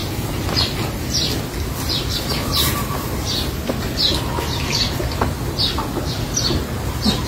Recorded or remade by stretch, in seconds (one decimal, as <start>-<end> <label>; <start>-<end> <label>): 0.0-7.3 recorded